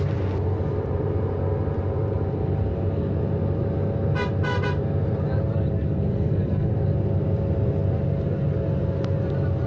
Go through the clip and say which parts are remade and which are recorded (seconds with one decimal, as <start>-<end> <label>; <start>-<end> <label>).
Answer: 0.0-6.1 recorded; 6.1-6.7 remade; 6.7-9.7 recorded